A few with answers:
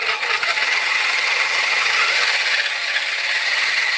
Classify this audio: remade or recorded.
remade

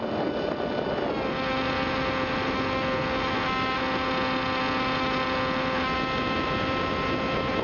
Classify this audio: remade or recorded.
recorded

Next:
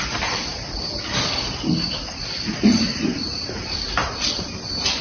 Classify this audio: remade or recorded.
remade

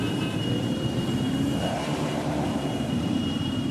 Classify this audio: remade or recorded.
remade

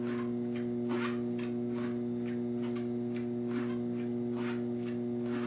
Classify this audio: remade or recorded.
recorded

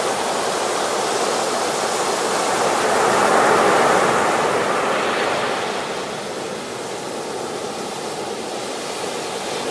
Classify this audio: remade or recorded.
recorded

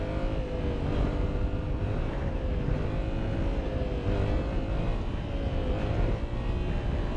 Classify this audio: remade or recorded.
recorded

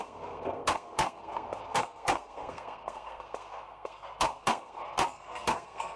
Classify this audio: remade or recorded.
remade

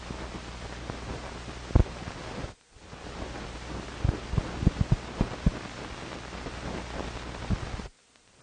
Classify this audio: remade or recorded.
recorded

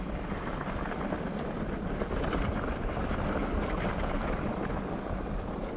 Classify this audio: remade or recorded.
recorded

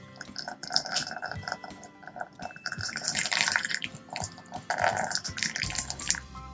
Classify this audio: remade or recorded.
remade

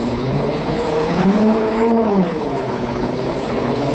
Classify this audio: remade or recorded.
remade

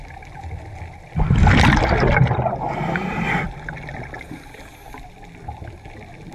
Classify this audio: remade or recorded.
recorded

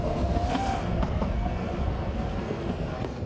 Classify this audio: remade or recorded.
remade